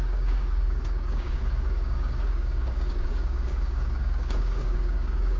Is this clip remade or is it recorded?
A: remade